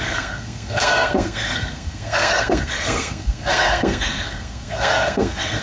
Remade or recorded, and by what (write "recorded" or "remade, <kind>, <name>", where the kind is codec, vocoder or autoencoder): remade, codec, SNAC